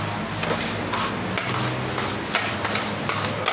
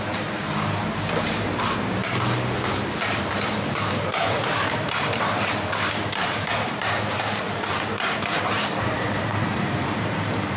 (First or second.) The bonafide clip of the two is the first